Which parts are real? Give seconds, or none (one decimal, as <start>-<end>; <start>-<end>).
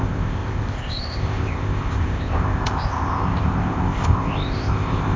none